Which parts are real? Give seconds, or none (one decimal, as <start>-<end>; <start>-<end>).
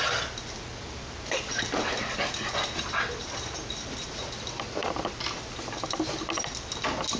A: 0.0-7.2